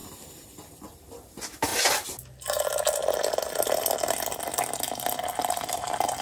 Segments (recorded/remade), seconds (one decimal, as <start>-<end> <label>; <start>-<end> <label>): 0.0-1.7 remade; 1.7-5.4 recorded; 5.4-6.2 remade